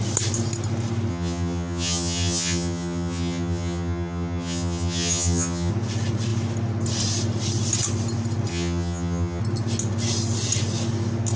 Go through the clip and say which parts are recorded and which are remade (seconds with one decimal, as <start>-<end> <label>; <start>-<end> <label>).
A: 0.0-1.1 recorded; 1.1-5.7 remade; 5.7-8.5 recorded; 8.5-9.4 remade; 9.4-11.4 recorded